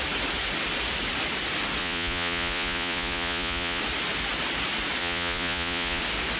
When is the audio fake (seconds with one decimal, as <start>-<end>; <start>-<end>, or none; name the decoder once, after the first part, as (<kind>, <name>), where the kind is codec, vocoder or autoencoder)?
1.8-3.8 (vocoder, Vocos); 5.0-6.0